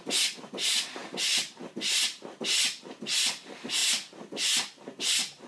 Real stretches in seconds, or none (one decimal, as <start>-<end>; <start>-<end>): 0.0-5.5